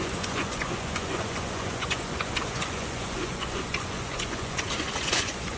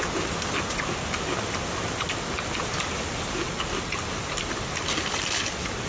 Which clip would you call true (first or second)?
second